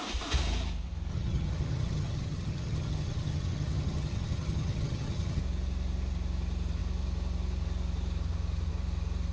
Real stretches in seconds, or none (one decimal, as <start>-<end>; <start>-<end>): 0.0-1.1; 5.4-9.3